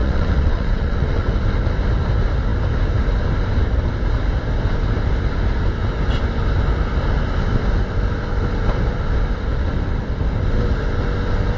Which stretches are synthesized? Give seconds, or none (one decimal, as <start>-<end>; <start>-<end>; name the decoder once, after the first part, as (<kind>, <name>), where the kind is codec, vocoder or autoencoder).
0.0-1.3 (vocoder, WaveNeXt)